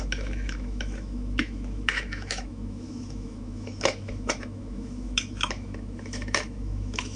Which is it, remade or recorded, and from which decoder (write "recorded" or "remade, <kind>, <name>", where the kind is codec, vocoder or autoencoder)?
remade, autoencoder, DAC-VAE